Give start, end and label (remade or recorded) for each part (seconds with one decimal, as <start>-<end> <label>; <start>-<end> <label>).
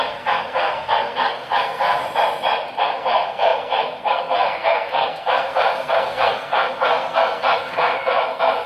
0.0-2.0 remade; 2.0-2.8 recorded; 2.8-8.7 remade